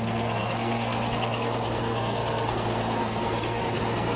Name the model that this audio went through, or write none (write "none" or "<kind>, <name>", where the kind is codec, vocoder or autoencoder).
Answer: codec, SNAC